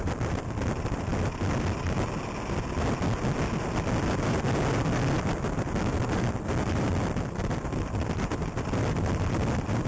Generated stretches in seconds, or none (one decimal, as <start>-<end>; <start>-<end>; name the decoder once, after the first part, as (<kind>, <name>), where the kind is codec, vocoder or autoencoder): 0.0-1.1 (vocoder, BigVGAN v2); 6.0-9.9